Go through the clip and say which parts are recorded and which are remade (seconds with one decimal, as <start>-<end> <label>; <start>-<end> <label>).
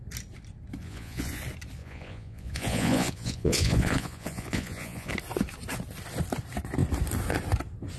0.0-0.8 recorded; 0.8-1.4 remade; 1.4-1.8 recorded; 1.8-5.1 remade; 5.1-8.0 recorded